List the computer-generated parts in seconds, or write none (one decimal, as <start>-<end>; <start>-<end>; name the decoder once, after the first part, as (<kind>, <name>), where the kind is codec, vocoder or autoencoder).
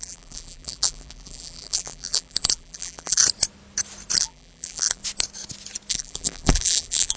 0.0-3.2 (vocoder, BigVGAN v2); 4.2-5.0; 5.9-7.2